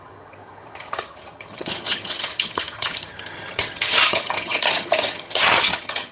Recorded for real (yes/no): no